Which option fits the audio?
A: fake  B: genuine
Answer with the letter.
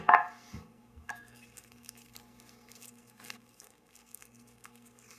A